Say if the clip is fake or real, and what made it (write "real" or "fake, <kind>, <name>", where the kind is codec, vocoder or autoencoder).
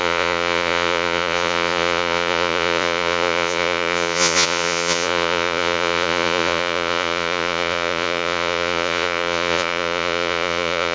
fake, vocoder, Vocos